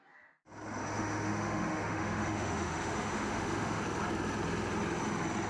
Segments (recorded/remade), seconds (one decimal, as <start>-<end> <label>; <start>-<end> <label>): 0.0-0.8 recorded; 0.8-3.8 remade; 3.8-5.5 recorded